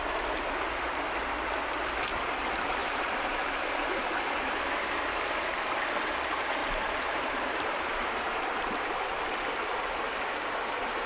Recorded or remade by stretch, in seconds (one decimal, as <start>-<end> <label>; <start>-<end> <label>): 0.0-2.8 recorded; 2.8-5.3 remade; 5.3-6.6 recorded; 6.6-9.2 remade; 9.2-11.1 recorded